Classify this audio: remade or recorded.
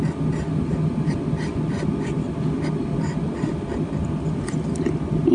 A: recorded